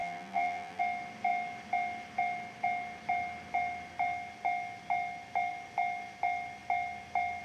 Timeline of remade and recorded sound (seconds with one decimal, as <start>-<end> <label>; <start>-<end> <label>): 0.0-0.8 remade; 0.8-7.4 recorded